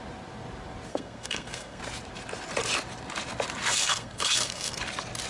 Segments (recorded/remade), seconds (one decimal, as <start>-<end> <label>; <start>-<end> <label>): 0.0-0.9 recorded; 0.9-1.8 remade; 1.8-3.7 recorded; 3.7-4.8 remade; 4.8-5.3 recorded